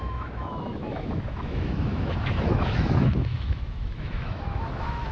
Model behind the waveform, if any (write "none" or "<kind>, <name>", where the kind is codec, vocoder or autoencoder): autoencoder, DAC-VAE